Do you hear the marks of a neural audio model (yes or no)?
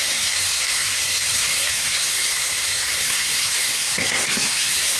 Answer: yes